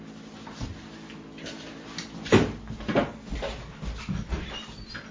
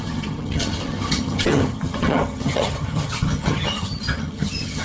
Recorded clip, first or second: first